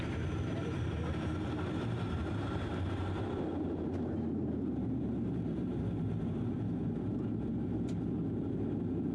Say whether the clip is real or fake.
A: fake